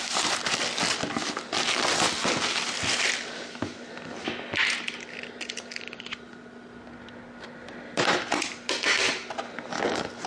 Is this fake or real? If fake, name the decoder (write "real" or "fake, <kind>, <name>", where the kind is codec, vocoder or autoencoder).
real